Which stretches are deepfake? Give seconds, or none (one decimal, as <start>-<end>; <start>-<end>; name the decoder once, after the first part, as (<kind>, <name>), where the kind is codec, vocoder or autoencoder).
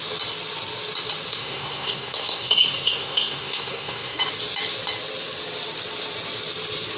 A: 1.3-4.2 (codec, SNAC)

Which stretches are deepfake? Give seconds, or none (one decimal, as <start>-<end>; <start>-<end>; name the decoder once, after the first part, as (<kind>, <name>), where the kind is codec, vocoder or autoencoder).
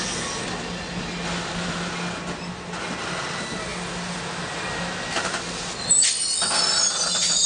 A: none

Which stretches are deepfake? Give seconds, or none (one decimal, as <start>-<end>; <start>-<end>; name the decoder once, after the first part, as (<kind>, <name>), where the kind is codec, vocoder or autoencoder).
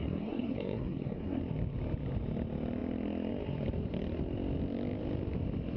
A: 0.0-1.4 (codec, SNAC)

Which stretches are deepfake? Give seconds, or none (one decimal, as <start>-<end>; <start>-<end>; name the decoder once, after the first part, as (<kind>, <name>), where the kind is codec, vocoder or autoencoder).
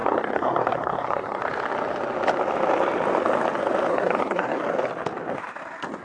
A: 0.0-1.4 (codec, SNAC); 3.9-4.6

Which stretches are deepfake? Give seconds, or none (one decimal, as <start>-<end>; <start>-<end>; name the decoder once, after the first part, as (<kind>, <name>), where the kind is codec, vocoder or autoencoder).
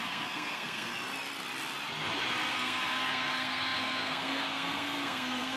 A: 0.0-0.9 (codec, SNAC); 2.5-5.6